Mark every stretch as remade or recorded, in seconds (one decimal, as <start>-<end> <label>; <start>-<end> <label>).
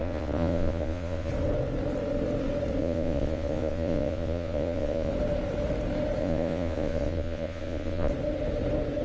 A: 0.0-1.3 remade; 1.3-2.8 recorded; 2.8-5.1 remade; 5.1-6.2 recorded; 6.2-8.1 remade; 8.1-9.0 recorded